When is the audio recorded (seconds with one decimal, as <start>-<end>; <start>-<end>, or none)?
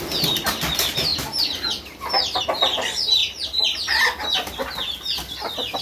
3.2-5.8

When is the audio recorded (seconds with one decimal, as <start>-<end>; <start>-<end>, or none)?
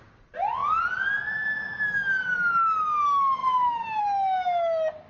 0.0-5.1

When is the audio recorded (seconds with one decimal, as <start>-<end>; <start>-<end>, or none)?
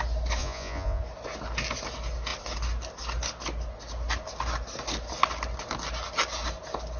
0.0-0.4; 1.0-7.0